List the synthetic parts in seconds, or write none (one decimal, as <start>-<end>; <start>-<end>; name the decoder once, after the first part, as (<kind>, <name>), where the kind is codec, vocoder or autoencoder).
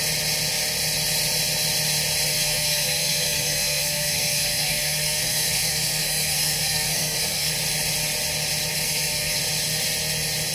2.3-7.5 (codec, SNAC); 8.7-9.4